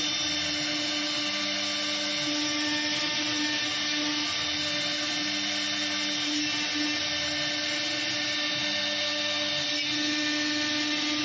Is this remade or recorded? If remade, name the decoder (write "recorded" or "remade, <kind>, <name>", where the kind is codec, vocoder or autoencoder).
recorded